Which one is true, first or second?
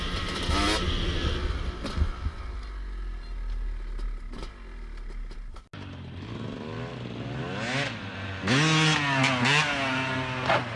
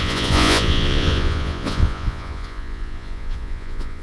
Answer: first